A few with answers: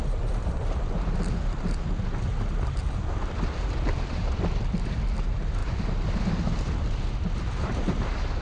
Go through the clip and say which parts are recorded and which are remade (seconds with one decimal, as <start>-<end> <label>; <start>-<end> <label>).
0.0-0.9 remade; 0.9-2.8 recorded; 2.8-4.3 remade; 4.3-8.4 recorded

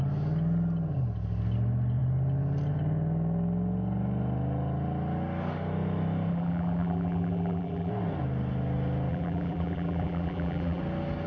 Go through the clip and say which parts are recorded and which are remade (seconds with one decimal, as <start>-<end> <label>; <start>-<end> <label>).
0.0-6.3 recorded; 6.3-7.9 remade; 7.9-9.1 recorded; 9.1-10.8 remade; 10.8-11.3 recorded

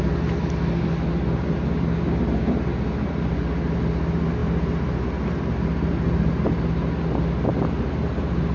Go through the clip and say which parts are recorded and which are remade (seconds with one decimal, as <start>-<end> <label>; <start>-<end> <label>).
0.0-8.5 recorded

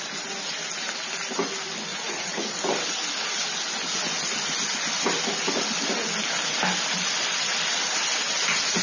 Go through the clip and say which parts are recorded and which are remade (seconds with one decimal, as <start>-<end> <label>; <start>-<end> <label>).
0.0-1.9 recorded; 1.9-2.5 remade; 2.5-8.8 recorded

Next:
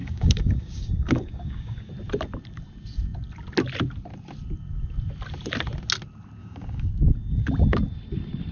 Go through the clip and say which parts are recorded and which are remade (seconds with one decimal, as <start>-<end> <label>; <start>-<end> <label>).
0.0-1.9 remade; 1.9-6.4 recorded; 6.4-6.9 remade; 6.9-8.5 recorded